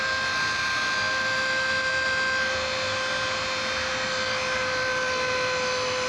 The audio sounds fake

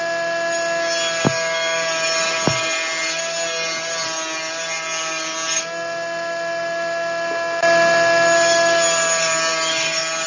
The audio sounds real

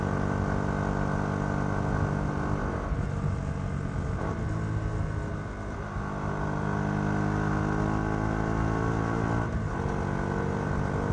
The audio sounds real